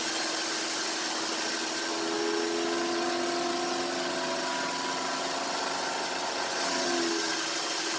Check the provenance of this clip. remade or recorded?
recorded